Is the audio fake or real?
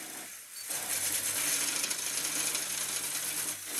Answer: real